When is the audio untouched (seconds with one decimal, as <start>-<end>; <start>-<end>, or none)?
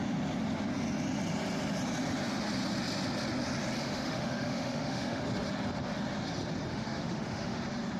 0.0-3.8; 5.2-6.7; 7.6-8.0